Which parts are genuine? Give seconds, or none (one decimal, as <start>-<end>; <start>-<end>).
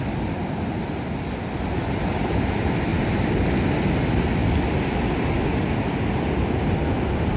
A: 0.0-7.4